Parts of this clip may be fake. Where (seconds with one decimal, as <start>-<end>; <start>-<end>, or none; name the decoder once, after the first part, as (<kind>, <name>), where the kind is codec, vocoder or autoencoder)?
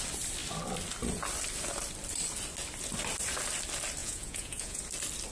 4.0-4.8 (vocoder, Vocos)